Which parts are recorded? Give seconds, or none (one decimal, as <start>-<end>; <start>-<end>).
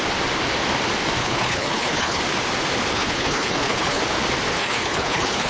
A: 0.0-1.2; 2.2-2.9; 4.0-4.6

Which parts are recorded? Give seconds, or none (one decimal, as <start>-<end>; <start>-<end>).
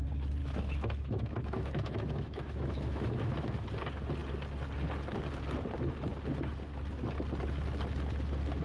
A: 0.0-0.4; 3.7-8.6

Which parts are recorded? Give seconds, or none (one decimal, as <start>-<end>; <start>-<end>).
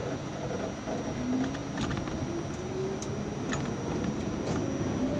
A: 0.5-5.2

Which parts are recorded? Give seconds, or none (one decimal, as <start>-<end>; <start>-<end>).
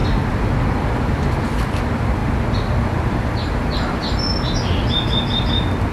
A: 0.0-2.2; 4.2-5.9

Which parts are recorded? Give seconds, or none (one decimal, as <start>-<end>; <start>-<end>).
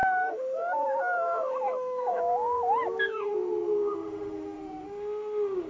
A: 2.2-3.1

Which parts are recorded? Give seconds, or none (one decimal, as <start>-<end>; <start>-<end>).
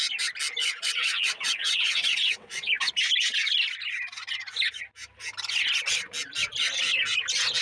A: 0.0-0.6; 2.7-7.6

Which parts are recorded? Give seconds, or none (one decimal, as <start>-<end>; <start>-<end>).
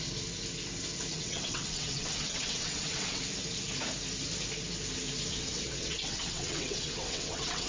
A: 0.0-1.1; 3.2-5.3